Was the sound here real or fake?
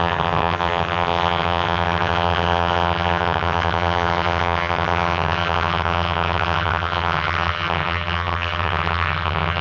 fake